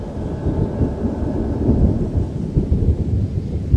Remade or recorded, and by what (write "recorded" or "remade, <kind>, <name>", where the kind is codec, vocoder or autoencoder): recorded